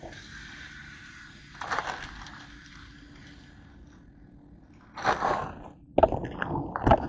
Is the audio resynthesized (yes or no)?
no